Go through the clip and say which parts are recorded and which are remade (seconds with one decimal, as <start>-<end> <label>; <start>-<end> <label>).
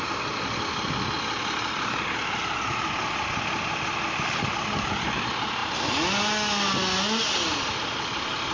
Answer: 0.0-8.5 recorded